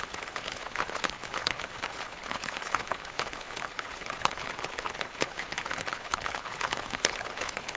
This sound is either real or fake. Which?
fake